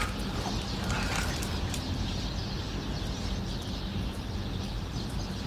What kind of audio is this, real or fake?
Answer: real